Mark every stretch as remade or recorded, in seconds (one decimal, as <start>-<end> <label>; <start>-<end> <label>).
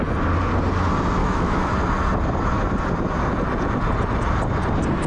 0.0-1.2 recorded; 1.2-1.7 remade; 1.7-5.1 recorded